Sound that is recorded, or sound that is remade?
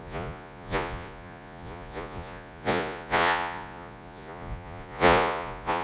remade